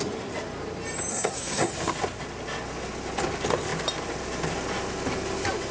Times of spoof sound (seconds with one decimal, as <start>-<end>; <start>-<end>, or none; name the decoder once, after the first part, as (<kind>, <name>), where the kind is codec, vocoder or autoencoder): 1.1-1.7 (codec, SNAC)